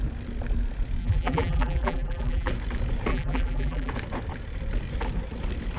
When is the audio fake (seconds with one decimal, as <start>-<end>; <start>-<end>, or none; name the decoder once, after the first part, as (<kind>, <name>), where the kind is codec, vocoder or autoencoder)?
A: 1.0-2.5 (vocoder, BigVGAN v2); 3.1-3.9